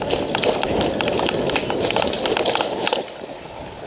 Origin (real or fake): real